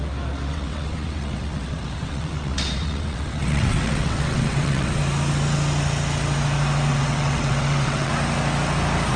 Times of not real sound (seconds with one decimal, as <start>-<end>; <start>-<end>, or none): 0.4-5.0; 6.9-8.1